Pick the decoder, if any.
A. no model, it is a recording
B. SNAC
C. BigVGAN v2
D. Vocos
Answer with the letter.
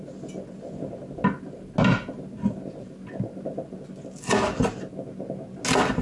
A